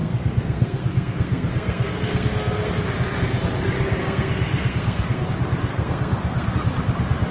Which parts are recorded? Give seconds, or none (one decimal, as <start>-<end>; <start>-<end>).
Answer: 2.7-4.0; 5.3-5.7; 6.5-7.3